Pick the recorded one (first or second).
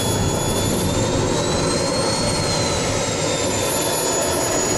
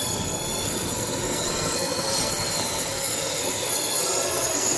first